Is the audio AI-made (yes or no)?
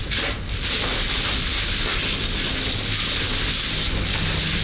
no